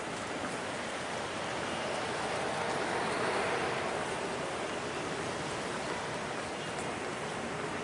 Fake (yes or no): no